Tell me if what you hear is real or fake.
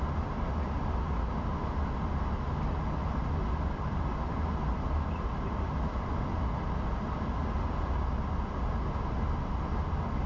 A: real